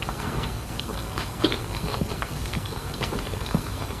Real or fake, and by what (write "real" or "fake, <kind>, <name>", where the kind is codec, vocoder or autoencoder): fake, codec, SNAC